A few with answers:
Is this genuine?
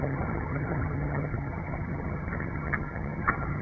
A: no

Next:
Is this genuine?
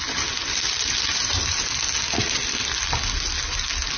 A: yes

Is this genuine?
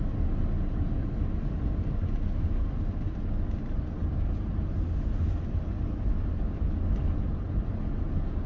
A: yes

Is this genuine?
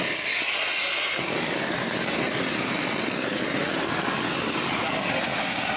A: yes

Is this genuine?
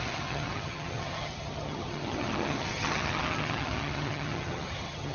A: no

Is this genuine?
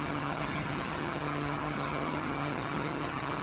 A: no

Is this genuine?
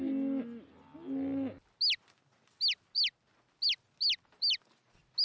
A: yes